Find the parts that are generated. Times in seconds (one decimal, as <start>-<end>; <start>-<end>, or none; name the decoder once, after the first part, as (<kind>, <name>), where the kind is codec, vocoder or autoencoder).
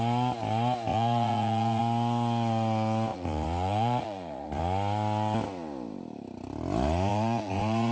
0.9-1.8 (vocoder, Vocos); 3.1-4.6; 7.1-7.9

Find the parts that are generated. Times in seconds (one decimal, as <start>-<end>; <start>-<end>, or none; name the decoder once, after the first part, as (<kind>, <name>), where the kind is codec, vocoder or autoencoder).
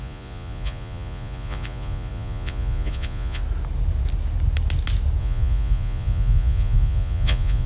0.0-3.4 (vocoder, Vocos); 5.2-7.7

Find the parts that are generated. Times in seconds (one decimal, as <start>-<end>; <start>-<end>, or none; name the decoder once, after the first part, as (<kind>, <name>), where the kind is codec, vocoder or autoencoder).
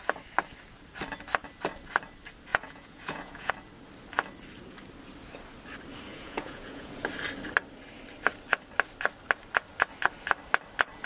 2.5-3.5 (vocoder, Vocos); 6.1-6.9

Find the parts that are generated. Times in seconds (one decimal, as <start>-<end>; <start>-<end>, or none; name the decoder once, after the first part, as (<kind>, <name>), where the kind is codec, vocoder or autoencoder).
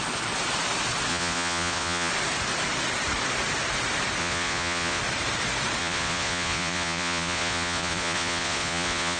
1.1-2.1 (vocoder, Vocos); 4.2-5.0; 5.8-9.2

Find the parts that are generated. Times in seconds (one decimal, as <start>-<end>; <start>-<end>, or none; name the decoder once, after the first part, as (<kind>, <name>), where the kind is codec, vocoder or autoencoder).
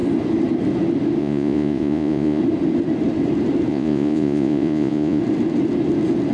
1.2-2.4 (vocoder, Vocos); 3.7-5.2